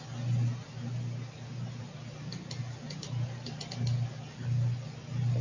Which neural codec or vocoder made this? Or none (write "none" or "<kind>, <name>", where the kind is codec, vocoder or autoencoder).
none